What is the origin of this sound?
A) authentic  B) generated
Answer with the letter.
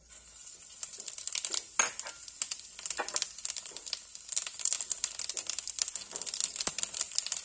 A